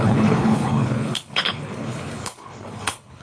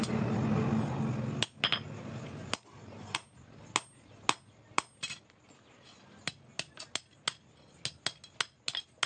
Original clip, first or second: second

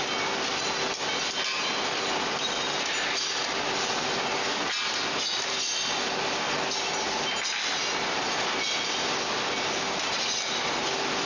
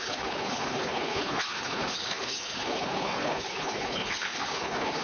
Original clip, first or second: first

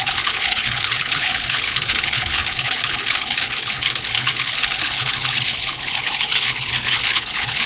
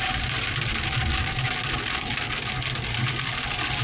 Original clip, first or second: second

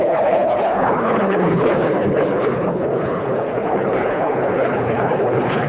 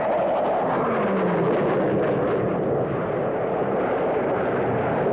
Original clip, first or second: second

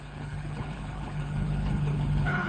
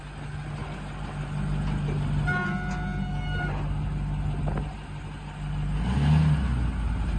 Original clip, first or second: second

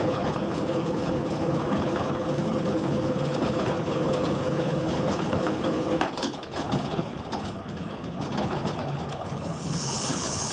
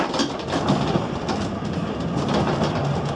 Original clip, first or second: second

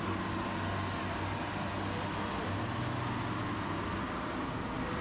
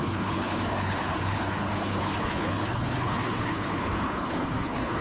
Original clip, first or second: first